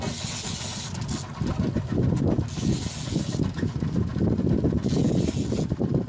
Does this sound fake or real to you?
real